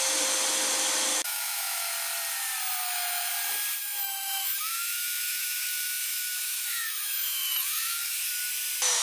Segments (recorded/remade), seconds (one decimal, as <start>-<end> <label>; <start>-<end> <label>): 0.0-1.1 recorded; 1.1-1.9 remade; 1.9-2.8 recorded; 2.8-3.3 remade; 3.3-3.8 recorded; 3.8-8.3 remade; 8.3-9.0 recorded